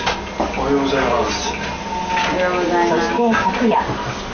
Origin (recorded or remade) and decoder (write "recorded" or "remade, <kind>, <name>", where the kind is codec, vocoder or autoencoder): recorded